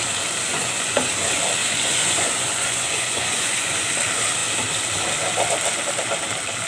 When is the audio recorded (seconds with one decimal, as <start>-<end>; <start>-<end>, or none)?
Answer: 0.0-0.5; 1.1-1.6; 3.9-6.7

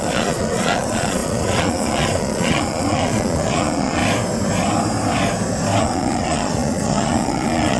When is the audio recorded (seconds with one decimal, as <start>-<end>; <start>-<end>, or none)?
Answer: 4.0-5.8

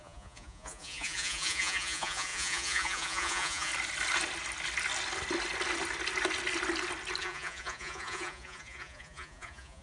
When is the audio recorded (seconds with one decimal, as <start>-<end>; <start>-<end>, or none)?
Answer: 3.7-7.2

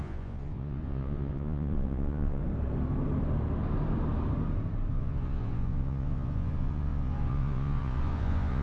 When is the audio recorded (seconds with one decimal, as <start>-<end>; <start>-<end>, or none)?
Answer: 2.4-4.9

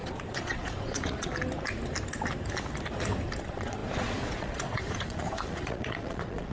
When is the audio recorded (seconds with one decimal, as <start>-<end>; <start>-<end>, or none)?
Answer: 1.3-3.4

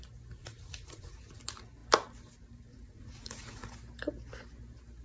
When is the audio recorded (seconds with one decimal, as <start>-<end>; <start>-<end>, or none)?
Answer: 0.0-0.4; 1.3-2.7; 3.7-5.0

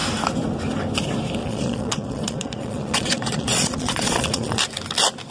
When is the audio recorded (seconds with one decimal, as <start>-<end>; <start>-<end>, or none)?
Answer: 0.0-1.4; 4.6-5.3